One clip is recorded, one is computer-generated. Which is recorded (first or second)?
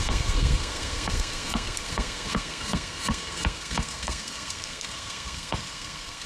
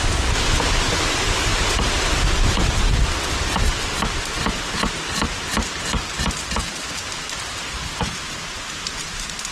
second